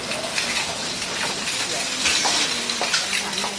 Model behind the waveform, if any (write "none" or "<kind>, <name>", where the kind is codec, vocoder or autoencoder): none